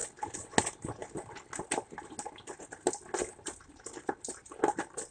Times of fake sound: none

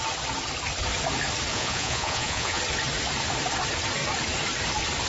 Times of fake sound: 1.5-2.6 (vocoder, Vocos)

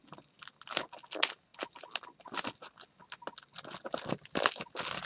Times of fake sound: none

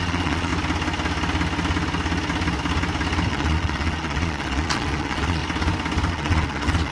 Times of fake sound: 0.0-0.5 (vocoder, Vocos); 3.3-5.4; 6.1-6.9